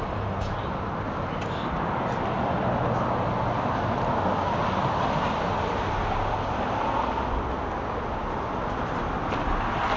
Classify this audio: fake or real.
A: real